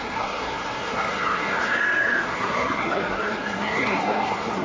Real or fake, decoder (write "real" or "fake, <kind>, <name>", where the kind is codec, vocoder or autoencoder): fake, codec, SNAC